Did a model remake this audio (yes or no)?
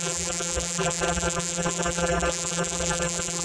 yes